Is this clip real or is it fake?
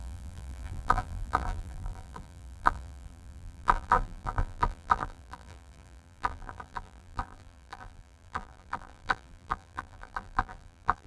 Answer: fake